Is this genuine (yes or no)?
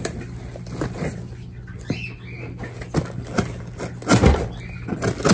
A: yes